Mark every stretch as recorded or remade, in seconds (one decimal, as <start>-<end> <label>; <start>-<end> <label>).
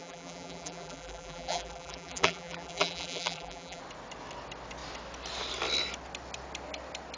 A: 0.0-3.8 remade; 3.8-7.2 recorded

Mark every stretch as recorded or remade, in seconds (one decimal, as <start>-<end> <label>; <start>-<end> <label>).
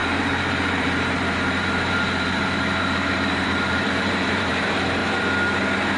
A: 0.0-5.0 remade; 5.0-6.0 recorded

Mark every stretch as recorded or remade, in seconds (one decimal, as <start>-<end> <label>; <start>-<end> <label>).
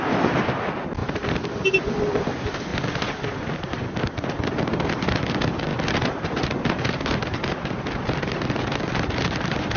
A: 0.0-9.8 recorded